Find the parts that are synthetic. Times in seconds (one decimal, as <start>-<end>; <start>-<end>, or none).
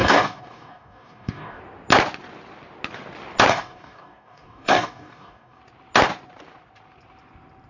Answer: 0.0-1.6; 3.5-5.6